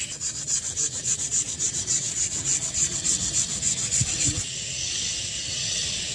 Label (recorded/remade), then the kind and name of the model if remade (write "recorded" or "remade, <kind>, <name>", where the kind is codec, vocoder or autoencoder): remade, vocoder, WaveNeXt